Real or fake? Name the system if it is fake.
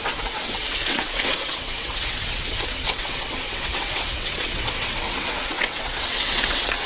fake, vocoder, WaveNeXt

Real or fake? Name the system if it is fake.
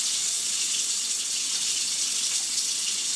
fake, vocoder, WaveNeXt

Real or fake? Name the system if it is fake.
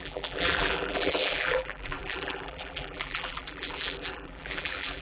fake, vocoder, BigVGAN v2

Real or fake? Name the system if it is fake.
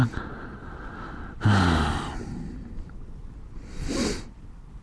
real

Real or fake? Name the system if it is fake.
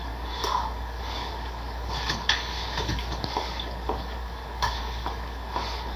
fake, codec, DAC